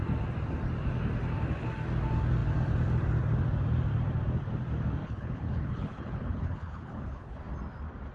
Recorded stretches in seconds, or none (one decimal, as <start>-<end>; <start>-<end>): 0.0-5.0; 7.4-8.1